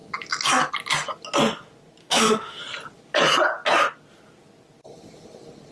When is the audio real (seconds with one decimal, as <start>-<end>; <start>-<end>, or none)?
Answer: 0.0-2.0; 2.6-5.7